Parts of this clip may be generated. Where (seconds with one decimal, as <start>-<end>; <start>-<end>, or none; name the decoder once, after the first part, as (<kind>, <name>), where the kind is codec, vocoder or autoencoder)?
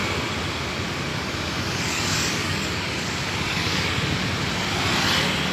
1.1-3.9 (codec, DAC)